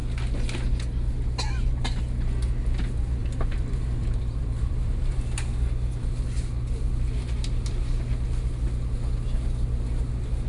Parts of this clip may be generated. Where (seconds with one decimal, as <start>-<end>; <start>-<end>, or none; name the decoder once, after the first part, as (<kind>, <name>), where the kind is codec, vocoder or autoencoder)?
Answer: 3.2-5.2 (vocoder, BigVGAN v2)